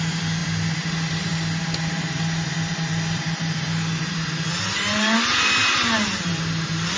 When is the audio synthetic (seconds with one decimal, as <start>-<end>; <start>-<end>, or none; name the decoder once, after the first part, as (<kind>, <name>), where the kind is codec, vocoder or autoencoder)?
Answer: none

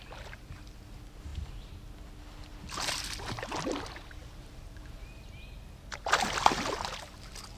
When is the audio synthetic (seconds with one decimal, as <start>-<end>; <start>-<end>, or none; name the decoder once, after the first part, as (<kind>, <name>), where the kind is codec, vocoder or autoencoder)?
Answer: 4.2-4.9 (vocoder, BigVGAN v2)

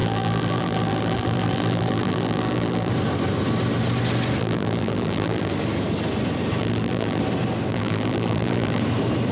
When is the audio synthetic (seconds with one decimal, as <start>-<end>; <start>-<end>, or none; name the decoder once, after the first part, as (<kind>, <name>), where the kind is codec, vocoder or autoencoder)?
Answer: 0.0-2.9 (vocoder, BigVGAN v2); 4.4-5.5; 6.6-7.2; 7.7-8.8

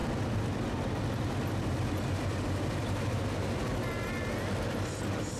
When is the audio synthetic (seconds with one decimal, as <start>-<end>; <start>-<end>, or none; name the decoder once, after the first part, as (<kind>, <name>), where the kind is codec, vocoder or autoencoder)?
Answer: 0.0-3.2 (vocoder, BigVGAN v2); 3.6-4.2

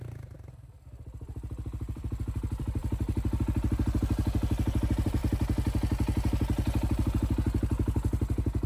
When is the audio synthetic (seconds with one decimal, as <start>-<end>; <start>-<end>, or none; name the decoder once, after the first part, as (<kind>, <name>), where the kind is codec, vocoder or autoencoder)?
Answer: 0.0-5.2 (vocoder, BigVGAN v2)

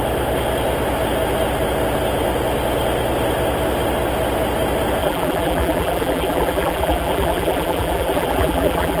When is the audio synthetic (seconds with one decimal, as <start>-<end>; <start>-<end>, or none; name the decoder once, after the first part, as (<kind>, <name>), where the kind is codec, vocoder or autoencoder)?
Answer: 5.0-9.0 (vocoder, BigVGAN v2)

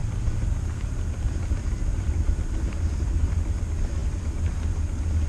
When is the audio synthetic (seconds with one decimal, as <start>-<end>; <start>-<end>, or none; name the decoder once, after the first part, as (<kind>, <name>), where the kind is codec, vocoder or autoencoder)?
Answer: 0.0-3.2 (vocoder, BigVGAN v2); 4.0-4.7